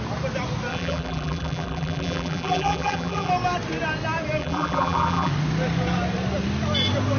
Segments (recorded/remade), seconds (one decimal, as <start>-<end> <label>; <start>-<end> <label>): 0.0-0.7 recorded; 0.7-3.3 remade; 3.3-4.4 recorded; 4.4-5.3 remade; 5.3-7.2 recorded